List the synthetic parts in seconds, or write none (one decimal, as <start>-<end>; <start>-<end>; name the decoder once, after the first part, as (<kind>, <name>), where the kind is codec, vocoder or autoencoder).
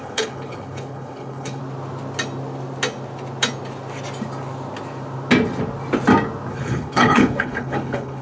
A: 0.0-1.6 (codec, HILCodec); 6.5-8.2